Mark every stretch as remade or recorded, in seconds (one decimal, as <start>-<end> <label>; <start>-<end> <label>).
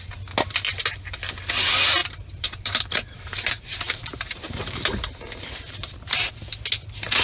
0.0-2.0 recorded; 2.0-6.3 remade; 6.3-7.2 recorded